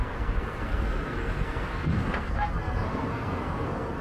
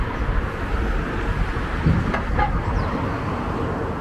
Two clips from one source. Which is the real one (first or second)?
second